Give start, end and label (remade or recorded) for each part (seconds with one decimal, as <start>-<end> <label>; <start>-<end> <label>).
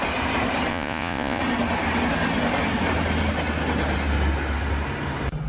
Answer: 0.0-0.7 recorded; 0.7-1.4 remade; 1.4-5.5 recorded